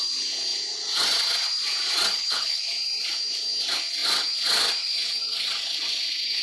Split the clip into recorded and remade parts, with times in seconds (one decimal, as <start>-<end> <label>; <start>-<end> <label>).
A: 0.0-2.1 recorded; 2.1-2.6 remade; 2.6-6.4 recorded